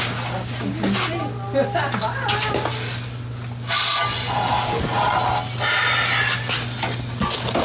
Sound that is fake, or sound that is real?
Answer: real